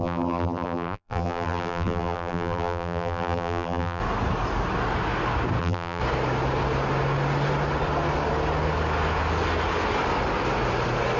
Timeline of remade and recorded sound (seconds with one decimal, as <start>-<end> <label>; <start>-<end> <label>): 0.0-4.0 remade; 4.0-5.6 recorded; 5.6-6.0 remade; 6.0-11.2 recorded